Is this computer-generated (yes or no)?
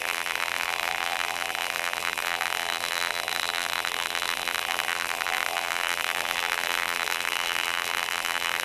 yes